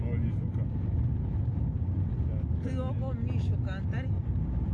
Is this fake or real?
real